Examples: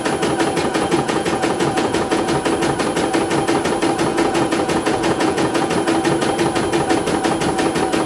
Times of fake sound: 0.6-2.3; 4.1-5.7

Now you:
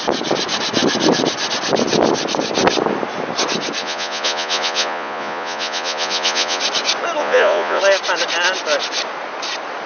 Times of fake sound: 3.8-6.6; 7.2-7.8